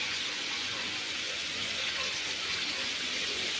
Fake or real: fake